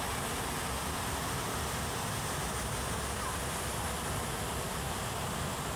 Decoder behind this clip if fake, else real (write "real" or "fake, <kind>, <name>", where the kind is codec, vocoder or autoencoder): real